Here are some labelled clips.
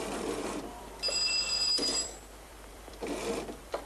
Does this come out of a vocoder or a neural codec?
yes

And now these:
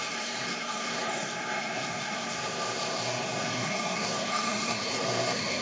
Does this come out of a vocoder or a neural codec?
yes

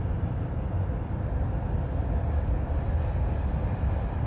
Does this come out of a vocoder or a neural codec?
no